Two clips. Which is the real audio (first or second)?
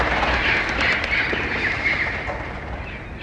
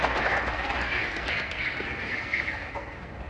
first